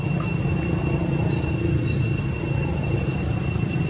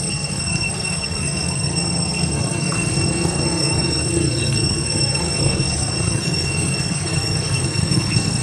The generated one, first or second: second